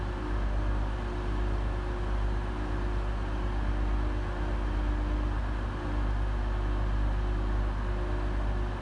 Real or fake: real